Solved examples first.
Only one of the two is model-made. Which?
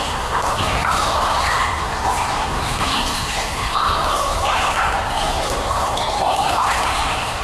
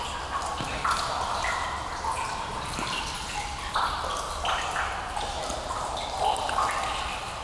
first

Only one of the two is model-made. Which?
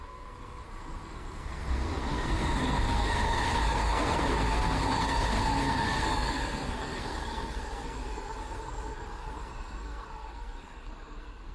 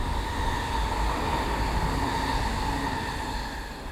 first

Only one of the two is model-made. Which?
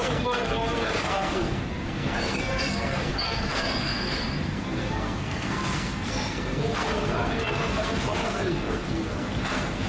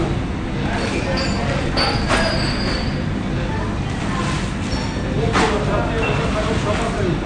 first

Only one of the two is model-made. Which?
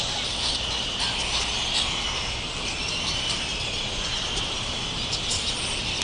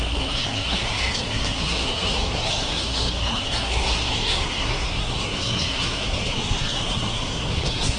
second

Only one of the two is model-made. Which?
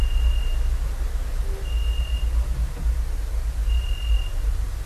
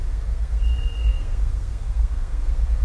second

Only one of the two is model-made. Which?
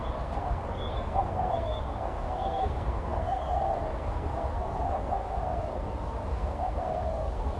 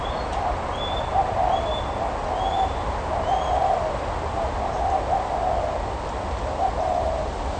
first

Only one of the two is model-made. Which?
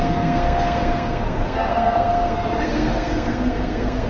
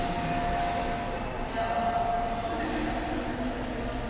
first